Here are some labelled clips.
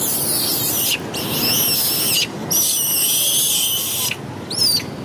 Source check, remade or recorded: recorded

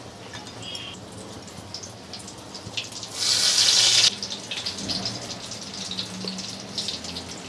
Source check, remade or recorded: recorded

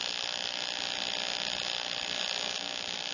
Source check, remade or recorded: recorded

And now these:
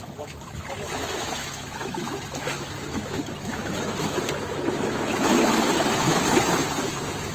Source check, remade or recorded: remade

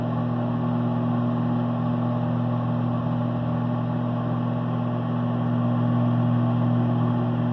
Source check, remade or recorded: recorded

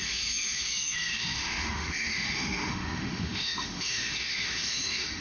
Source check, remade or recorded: remade